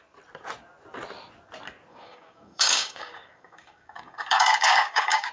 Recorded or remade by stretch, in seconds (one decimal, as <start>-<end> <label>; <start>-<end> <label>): 0.0-1.9 recorded; 1.9-5.3 remade